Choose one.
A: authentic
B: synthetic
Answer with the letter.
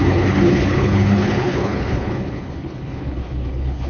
B